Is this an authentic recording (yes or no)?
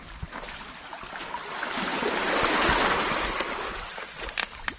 yes